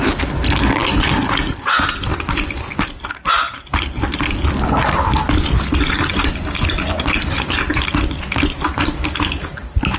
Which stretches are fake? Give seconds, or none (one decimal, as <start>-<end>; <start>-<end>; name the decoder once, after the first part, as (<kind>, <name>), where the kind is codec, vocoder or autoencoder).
none